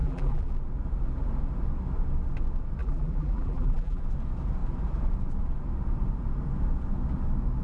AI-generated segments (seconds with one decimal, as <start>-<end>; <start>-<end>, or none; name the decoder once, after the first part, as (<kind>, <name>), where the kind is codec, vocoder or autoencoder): 0.0-0.5 (vocoder, BigVGAN v2); 2.8-4.0